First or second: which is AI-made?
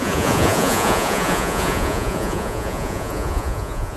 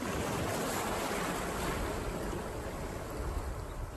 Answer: first